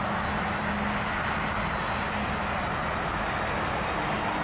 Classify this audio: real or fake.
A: real